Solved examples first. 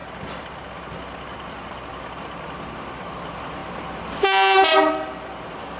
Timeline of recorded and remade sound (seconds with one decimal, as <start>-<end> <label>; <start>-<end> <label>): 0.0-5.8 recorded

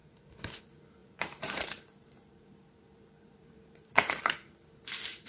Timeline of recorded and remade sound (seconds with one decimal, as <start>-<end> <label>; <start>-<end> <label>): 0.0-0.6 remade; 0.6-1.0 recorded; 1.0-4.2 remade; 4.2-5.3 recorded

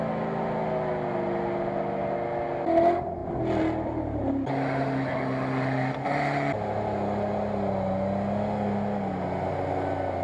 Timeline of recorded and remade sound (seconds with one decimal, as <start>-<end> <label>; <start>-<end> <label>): 0.0-10.2 recorded

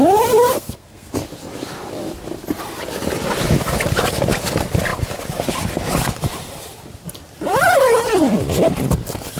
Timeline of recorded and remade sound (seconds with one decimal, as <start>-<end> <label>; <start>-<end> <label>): 0.0-0.5 recorded; 0.5-1.1 remade; 1.1-9.4 recorded